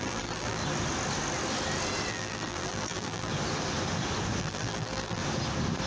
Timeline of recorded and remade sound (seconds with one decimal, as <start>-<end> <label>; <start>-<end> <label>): 0.0-0.6 remade; 0.6-2.1 recorded; 2.1-3.3 remade; 3.3-4.4 recorded; 4.4-5.2 remade; 5.2-5.9 recorded